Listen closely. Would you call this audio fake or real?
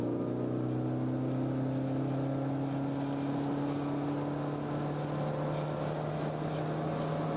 real